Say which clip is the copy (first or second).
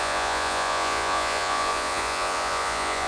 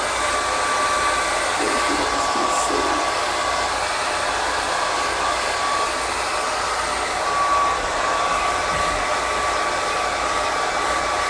first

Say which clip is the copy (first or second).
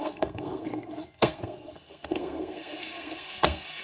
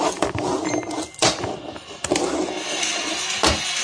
first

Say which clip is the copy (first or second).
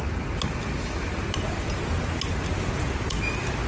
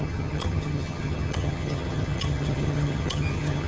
second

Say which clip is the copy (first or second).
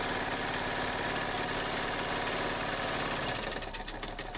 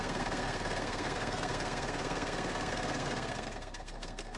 second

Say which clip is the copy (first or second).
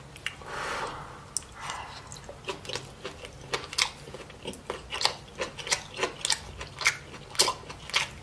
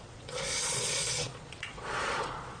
second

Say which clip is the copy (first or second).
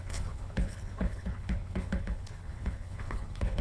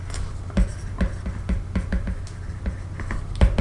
first